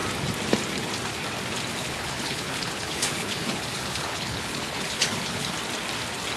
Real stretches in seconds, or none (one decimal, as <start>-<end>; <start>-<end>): 0.0-1.8; 5.5-6.4